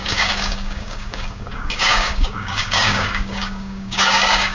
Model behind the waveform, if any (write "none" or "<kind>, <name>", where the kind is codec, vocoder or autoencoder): codec, DAC